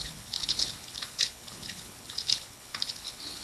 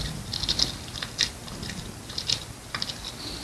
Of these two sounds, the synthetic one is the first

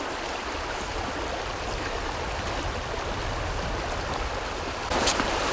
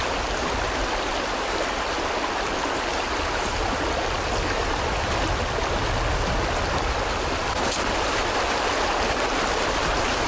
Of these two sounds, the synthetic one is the first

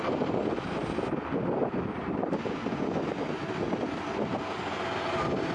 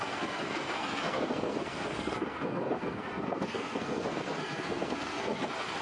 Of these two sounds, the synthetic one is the second